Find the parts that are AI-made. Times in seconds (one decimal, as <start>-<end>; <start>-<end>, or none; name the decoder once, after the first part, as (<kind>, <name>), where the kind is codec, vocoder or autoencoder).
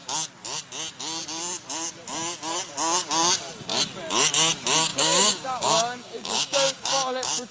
4.9-7.5 (codec, DAC)